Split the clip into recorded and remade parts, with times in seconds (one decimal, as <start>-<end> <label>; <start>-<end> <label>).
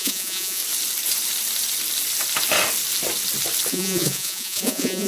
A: 0.0-0.6 remade; 0.6-3.7 recorded; 3.7-5.1 remade